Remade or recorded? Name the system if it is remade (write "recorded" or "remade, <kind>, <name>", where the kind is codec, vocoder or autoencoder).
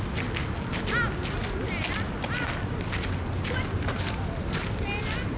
recorded